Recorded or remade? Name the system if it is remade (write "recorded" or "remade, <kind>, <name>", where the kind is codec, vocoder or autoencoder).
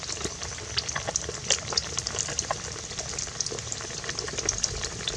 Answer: recorded